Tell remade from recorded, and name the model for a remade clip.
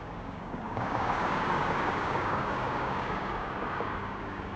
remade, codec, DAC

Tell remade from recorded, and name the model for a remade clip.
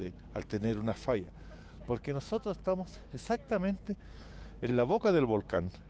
remade, codec, DAC